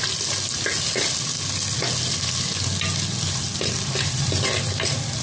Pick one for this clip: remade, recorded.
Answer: recorded